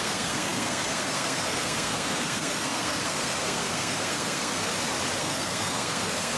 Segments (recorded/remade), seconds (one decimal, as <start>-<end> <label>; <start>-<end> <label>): 0.0-4.7 remade; 4.7-5.2 recorded; 5.2-6.4 remade